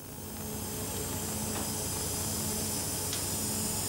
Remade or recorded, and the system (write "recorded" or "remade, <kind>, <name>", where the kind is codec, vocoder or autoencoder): recorded